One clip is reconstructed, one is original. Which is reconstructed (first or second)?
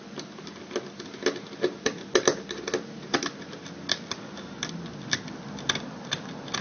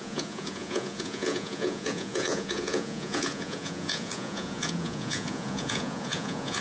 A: second